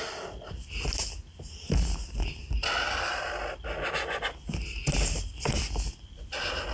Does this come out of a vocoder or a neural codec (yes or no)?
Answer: no